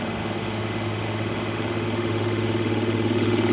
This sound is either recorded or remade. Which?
remade